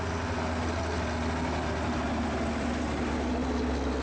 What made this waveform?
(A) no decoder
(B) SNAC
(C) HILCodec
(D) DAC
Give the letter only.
A